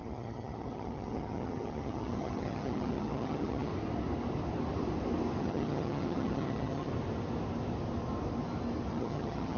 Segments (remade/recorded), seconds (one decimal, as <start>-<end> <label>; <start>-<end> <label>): 0.0-3.7 remade; 3.7-5.4 recorded; 5.4-6.9 remade; 6.9-8.9 recorded; 8.9-9.6 remade